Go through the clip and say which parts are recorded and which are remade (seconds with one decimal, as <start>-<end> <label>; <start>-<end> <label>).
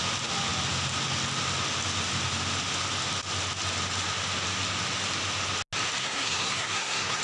0.0-6.0 recorded; 6.0-7.2 remade